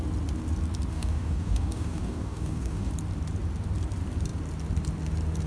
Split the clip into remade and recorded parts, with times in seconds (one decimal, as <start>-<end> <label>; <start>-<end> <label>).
0.0-0.9 recorded; 0.9-2.9 remade; 2.9-5.5 recorded